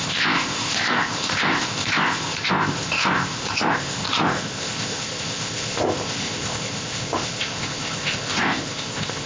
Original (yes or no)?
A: no